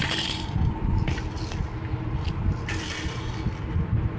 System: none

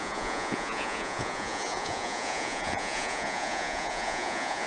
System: vocoder, Vocos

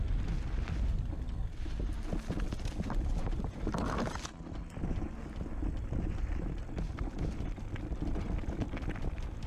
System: none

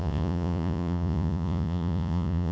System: vocoder, Vocos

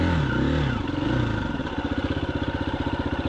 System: none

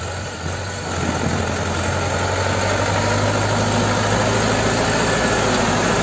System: none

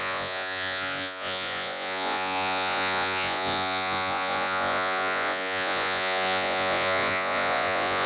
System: vocoder, Vocos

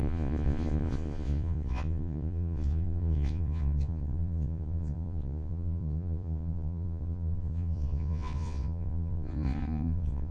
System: vocoder, Vocos